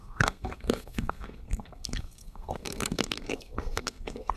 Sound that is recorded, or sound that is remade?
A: remade